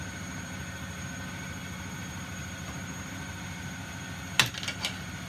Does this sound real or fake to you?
real